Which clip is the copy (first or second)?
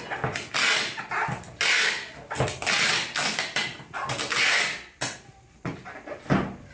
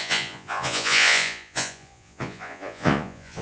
second